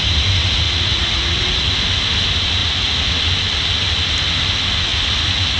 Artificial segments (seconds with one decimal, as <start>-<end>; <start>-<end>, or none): 0.4-1.7; 2.6-3.2; 4.9-5.6